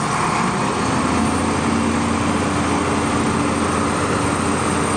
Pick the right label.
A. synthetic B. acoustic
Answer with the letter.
B